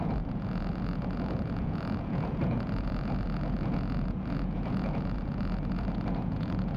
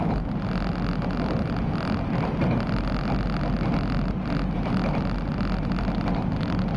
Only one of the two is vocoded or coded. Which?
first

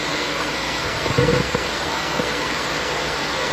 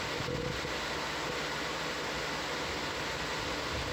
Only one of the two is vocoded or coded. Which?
first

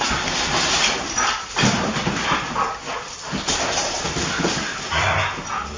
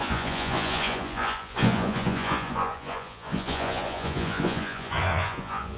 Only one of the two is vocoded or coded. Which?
second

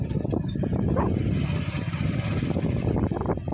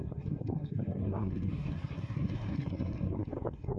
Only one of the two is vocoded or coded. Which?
second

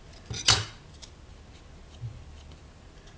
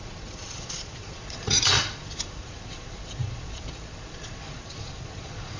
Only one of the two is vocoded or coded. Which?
second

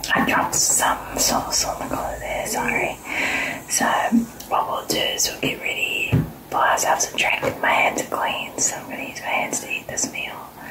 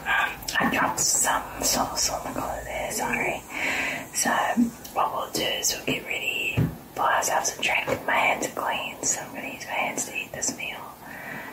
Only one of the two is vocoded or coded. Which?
second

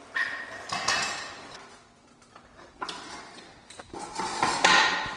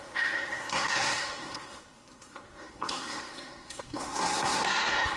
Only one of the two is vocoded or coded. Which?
second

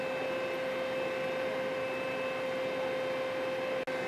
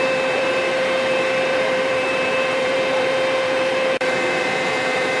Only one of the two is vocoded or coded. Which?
second